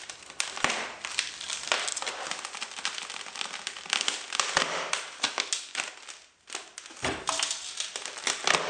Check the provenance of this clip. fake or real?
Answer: real